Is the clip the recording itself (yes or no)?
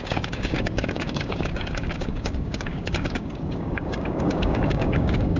no